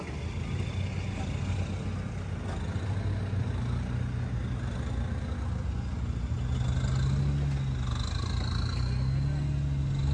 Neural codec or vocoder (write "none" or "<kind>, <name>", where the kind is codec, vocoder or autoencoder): none